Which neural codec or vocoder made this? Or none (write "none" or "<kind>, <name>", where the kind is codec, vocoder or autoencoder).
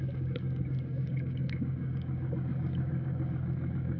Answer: codec, DAC